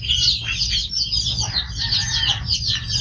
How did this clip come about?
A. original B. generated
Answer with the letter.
A